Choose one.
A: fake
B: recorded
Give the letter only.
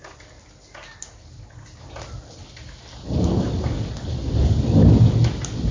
B